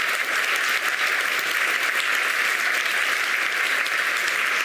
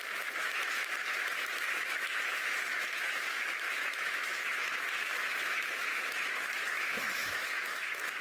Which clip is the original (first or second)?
first